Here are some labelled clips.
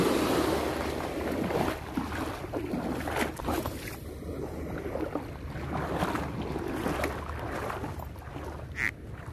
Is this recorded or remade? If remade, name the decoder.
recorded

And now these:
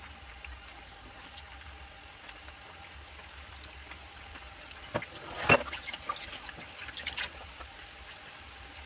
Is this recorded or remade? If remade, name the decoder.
recorded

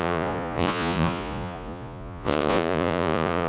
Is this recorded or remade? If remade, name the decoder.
remade, vocoder, Vocos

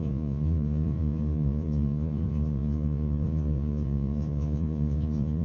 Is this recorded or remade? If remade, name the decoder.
remade, vocoder, Vocos